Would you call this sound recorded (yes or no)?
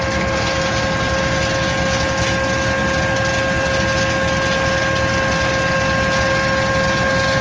yes